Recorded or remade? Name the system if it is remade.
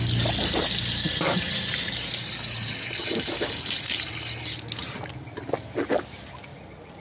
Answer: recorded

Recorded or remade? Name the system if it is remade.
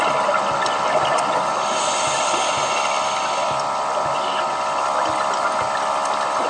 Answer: recorded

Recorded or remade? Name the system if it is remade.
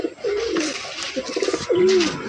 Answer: remade, vocoder, BigVGAN v2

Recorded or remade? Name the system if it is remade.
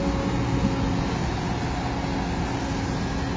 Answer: recorded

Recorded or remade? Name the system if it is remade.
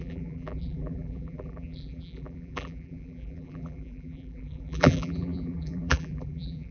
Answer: remade, vocoder, BigVGAN v2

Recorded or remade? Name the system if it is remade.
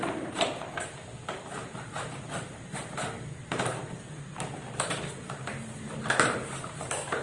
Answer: remade, vocoder, BigVGAN v2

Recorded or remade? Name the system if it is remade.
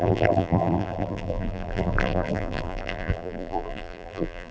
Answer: remade, vocoder, BigVGAN v2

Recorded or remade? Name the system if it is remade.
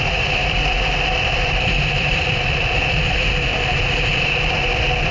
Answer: remade, vocoder, BigVGAN v2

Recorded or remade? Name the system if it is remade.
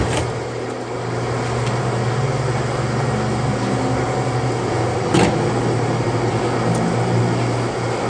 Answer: recorded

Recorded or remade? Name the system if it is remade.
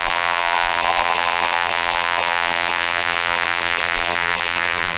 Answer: remade, vocoder, BigVGAN v2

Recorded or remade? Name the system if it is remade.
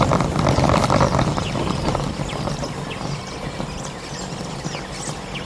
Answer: recorded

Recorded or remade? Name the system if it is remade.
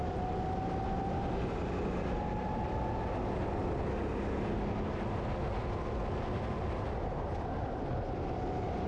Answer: recorded